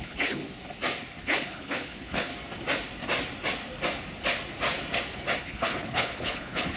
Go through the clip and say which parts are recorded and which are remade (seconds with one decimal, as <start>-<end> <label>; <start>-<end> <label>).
0.0-0.4 remade; 0.4-1.2 recorded; 1.2-2.3 remade; 2.3-5.4 recorded; 5.4-6.8 remade